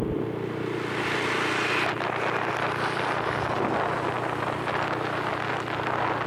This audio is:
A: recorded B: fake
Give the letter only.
A